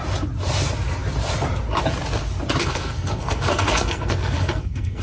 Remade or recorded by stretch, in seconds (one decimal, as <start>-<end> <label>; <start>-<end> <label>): 0.0-2.6 recorded; 2.6-5.0 remade